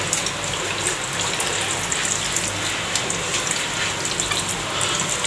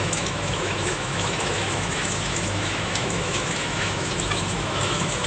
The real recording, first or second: first